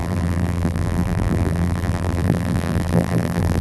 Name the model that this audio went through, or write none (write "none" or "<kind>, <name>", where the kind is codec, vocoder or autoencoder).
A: vocoder, BigVGAN v2